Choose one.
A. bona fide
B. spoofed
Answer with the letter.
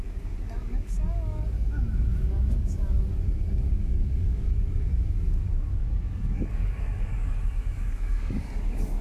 B